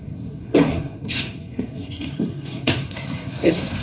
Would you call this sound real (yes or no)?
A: no